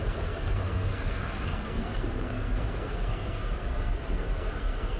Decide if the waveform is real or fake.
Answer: fake